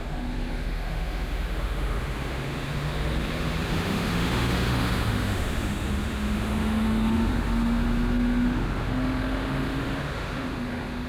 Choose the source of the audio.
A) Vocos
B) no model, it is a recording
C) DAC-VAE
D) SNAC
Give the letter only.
C